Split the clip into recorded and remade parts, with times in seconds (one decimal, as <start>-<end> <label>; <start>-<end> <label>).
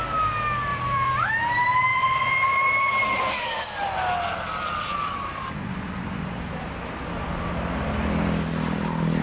0.0-0.7 recorded; 0.7-1.3 remade; 1.3-1.9 recorded; 1.9-6.8 remade; 6.8-9.2 recorded